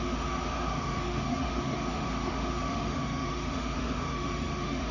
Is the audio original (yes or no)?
no